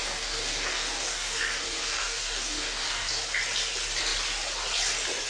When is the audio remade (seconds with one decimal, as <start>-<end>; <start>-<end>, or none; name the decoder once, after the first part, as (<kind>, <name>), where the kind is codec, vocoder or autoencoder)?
0.0-3.2 (codec, DAC)